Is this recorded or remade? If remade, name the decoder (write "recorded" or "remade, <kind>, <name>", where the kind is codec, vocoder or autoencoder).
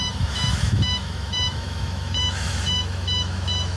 remade, autoencoder, DAC-VAE